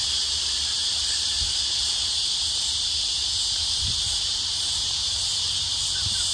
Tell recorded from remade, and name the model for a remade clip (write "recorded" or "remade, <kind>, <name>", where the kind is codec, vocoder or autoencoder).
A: remade, vocoder, BigVGAN v2